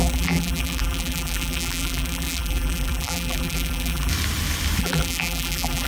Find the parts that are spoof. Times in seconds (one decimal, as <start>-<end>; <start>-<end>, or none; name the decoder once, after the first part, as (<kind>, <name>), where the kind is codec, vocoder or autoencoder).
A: 0.0-4.1 (vocoder, BigVGAN v2); 4.8-5.9